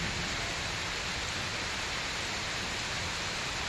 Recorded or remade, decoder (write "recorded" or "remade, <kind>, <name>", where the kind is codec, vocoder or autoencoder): recorded